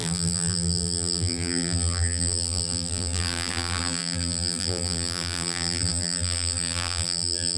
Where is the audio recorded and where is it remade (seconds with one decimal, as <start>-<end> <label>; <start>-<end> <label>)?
0.0-7.6 remade